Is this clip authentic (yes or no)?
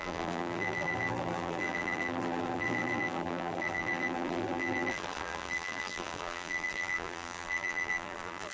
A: no